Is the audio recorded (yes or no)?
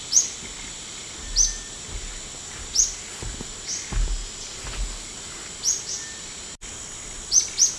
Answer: yes